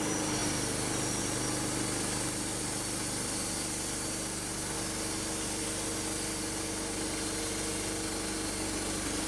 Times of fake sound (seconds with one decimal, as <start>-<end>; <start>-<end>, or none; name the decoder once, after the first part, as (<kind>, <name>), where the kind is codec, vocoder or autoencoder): none